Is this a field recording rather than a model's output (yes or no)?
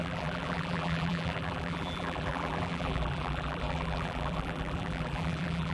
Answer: no